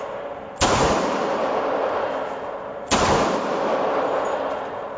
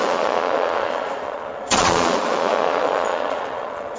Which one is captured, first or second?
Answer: first